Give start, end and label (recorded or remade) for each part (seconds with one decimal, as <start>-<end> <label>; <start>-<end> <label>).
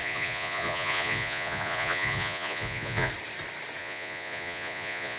0.0-3.1 remade; 3.1-3.8 recorded; 3.8-5.2 remade